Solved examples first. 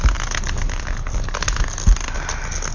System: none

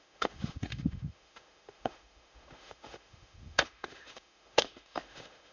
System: autoencoder, DAC-VAE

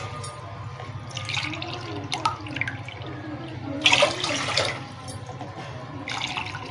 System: none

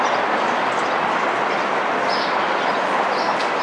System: none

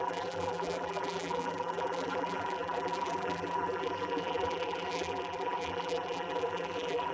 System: vocoder, BigVGAN v2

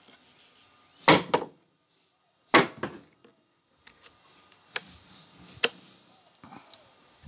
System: none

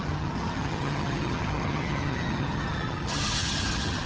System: vocoder, HiFi-GAN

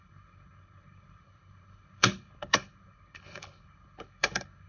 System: codec, HILCodec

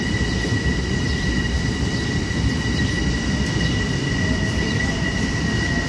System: vocoder, BigVGAN v2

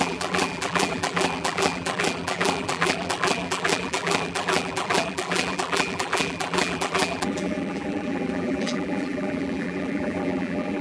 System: vocoder, BigVGAN v2